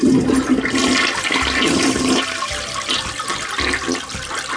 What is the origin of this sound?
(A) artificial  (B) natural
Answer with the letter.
B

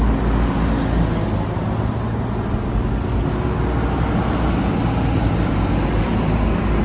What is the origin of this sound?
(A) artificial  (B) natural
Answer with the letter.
B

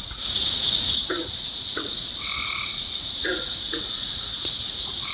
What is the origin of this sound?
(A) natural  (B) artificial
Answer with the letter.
B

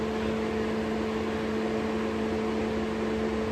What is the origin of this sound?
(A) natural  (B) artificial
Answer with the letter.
A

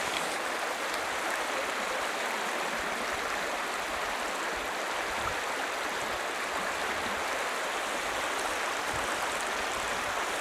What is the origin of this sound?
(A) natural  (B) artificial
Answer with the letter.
A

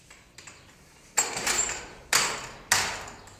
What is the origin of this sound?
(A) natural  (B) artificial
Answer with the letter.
A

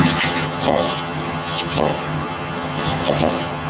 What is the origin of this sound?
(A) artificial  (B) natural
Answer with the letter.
A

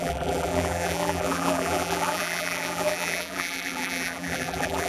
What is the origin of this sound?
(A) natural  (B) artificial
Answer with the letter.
B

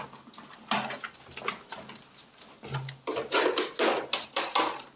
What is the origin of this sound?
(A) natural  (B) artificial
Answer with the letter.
A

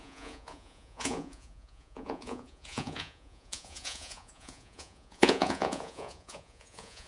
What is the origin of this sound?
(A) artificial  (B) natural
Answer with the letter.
A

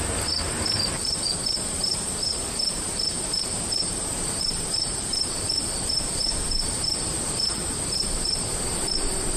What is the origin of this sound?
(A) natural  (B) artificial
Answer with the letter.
B